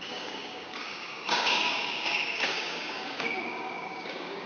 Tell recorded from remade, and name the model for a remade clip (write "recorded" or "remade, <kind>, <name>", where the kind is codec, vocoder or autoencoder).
remade, codec, DAC